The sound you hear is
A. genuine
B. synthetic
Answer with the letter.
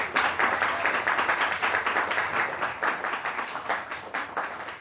A